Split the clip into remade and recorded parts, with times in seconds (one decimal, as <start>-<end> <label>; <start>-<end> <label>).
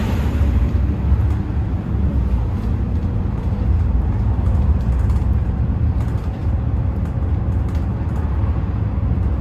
0.0-0.6 remade; 0.6-3.0 recorded; 3.0-5.7 remade; 5.7-9.4 recorded